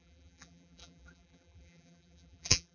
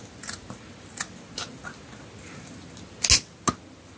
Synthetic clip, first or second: first